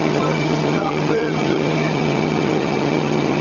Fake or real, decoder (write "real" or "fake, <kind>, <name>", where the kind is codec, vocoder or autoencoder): fake, vocoder, HiFi-GAN